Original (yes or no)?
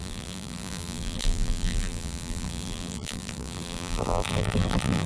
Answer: no